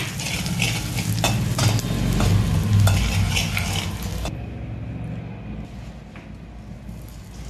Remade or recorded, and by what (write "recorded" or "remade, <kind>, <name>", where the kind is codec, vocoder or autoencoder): recorded